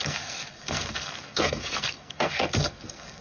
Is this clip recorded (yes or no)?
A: no